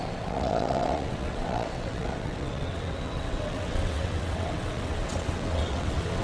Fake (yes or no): yes